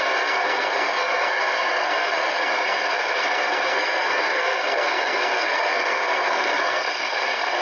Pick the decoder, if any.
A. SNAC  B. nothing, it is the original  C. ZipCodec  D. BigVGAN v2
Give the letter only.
A